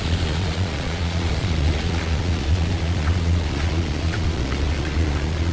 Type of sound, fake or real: fake